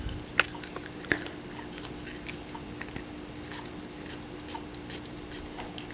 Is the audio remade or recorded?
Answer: recorded